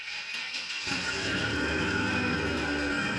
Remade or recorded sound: remade